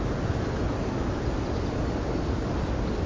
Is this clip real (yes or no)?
yes